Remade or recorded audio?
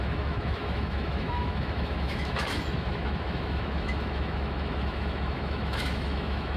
remade